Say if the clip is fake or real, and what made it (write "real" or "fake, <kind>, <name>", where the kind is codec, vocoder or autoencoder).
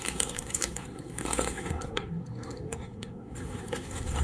fake, codec, SNAC